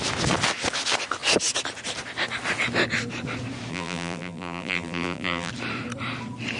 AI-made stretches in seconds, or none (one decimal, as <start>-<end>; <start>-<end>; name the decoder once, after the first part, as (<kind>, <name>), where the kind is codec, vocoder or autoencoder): 3.7-5.5 (vocoder, BigVGAN v2)